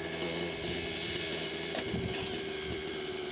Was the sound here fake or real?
real